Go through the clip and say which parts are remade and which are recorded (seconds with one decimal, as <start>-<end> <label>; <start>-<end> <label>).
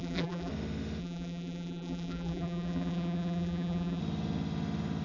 0.0-0.5 remade; 0.5-1.0 recorded; 1.0-4.0 remade; 4.0-5.0 recorded